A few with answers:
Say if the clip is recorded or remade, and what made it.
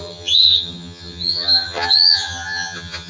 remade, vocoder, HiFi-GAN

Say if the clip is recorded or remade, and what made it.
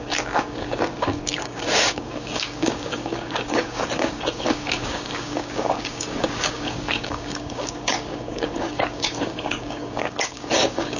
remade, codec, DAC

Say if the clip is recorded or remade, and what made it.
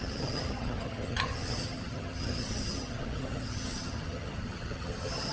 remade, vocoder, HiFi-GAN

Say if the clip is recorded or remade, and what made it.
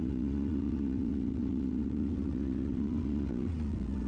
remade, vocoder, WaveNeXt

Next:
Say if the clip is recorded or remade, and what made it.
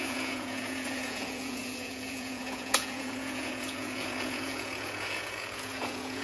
remade, vocoder, Vocos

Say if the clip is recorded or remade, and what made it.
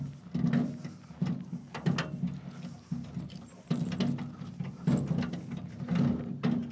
recorded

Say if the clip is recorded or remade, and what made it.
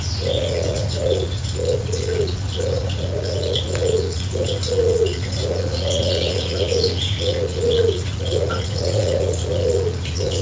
remade, vocoder, Vocos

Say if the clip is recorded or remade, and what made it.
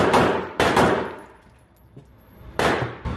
remade, vocoder, BigVGAN v2